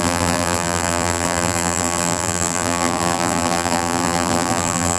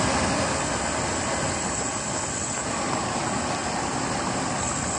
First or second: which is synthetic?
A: first